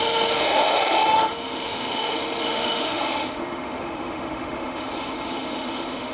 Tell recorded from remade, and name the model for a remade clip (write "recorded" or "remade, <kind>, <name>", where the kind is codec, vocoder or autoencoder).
remade, autoencoder, DAC-VAE